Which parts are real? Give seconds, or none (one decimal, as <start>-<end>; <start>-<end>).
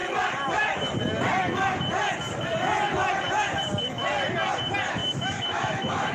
0.0-5.0